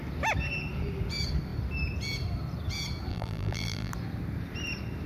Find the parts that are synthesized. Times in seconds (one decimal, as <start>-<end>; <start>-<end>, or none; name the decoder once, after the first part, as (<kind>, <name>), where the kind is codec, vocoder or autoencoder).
3.1-3.9 (vocoder, BigVGAN v2)